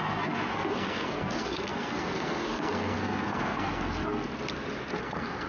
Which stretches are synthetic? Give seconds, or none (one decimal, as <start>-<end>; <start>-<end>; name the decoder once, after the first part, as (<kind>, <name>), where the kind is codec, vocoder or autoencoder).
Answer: 0.0-4.3 (codec, SNAC); 5.0-5.5